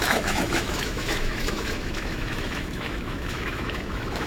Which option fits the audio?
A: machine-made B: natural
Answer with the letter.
A